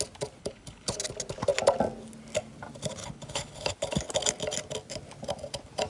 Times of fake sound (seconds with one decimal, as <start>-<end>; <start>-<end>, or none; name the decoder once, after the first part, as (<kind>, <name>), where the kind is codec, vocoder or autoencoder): 0.4-1.0 (codec, HILCodec); 3.0-3.7